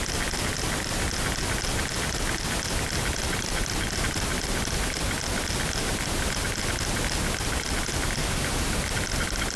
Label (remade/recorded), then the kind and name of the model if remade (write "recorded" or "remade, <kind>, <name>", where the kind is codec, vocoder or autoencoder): recorded